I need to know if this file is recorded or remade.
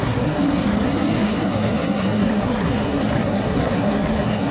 remade